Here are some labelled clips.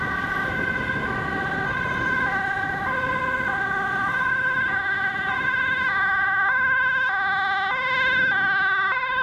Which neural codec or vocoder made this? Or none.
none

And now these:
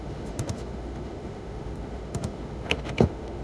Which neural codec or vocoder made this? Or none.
autoencoder, DAC-VAE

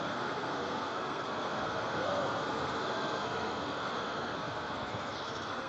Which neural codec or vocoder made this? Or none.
codec, SNAC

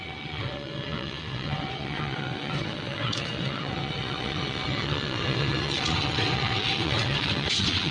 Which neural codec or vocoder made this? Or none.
vocoder, WaveNeXt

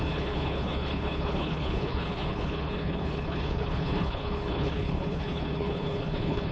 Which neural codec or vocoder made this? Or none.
codec, HILCodec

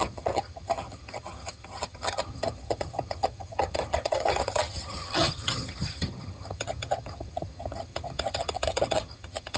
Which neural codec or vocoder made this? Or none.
vocoder, HiFi-GAN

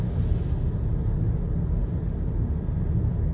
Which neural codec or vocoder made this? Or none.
none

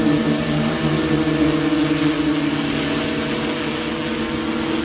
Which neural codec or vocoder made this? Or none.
none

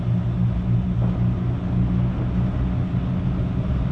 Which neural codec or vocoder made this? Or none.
none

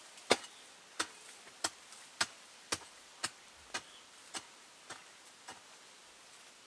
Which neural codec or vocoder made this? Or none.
none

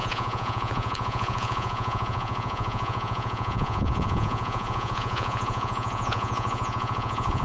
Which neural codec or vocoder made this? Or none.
vocoder, Vocos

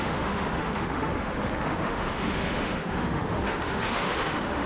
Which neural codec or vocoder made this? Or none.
autoencoder, DAC-VAE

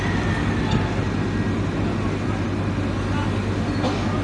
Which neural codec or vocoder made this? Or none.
none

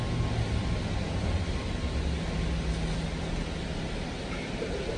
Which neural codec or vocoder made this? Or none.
none